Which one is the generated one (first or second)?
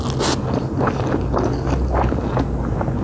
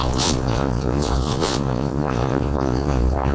second